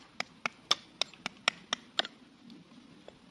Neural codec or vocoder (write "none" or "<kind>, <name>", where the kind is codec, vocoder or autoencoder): none